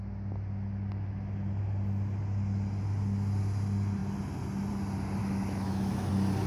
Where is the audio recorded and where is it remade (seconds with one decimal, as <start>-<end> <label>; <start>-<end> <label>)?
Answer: 0.0-5.2 recorded; 5.2-6.1 remade; 6.1-6.5 recorded